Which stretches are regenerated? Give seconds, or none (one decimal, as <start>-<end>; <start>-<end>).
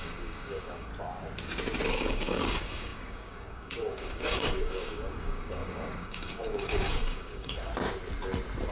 0.0-0.9; 1.9-7.7